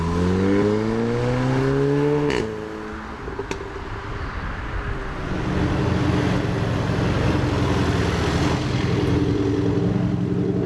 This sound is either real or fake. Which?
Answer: real